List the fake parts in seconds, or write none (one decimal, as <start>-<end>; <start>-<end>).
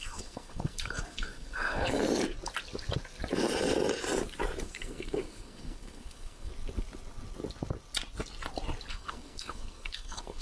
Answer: 0.0-2.0; 4.6-6.5; 8.9-10.4